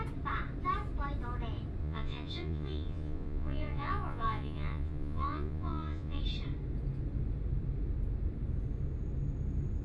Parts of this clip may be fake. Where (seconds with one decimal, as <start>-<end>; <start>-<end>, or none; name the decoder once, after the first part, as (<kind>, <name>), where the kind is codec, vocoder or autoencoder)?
1.8-6.2 (vocoder, Vocos)